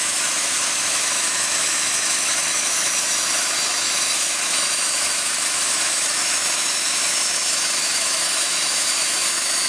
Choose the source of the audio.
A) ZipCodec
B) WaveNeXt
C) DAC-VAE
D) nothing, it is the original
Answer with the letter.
C